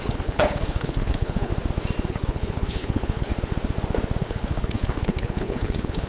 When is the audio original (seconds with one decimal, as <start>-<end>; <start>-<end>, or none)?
1.5-2.1; 3.3-4.2